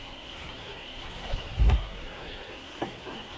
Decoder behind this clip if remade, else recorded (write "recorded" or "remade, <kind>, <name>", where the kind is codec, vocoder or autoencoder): remade, codec, SNAC